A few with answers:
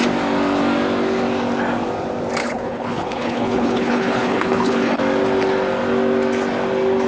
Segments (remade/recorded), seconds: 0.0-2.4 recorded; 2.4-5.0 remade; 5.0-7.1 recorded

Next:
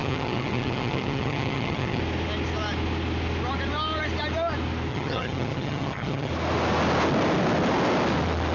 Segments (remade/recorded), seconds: 0.0-2.0 remade; 2.0-4.9 recorded; 4.9-6.3 remade; 6.3-8.5 recorded

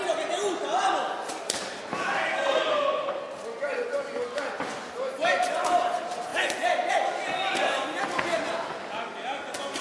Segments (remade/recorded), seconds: 0.0-2.3 recorded; 2.3-3.2 remade; 3.2-9.8 recorded

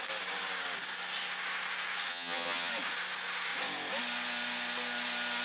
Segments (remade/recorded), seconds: 0.0-2.1 recorded; 2.1-2.7 remade; 2.7-5.4 recorded

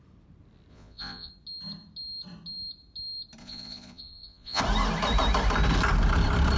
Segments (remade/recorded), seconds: 0.0-0.7 recorded; 0.7-1.3 remade; 1.3-3.4 recorded; 3.4-4.6 remade; 4.6-6.6 recorded

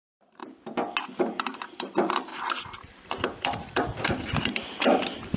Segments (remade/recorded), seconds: 0.0-0.4 remade; 0.4-1.2 recorded; 1.2-5.4 remade

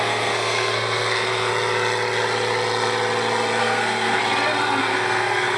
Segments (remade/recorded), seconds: 0.0-1.5 remade; 1.5-3.6 recorded; 3.6-4.2 remade; 4.2-4.8 recorded; 4.8-5.6 remade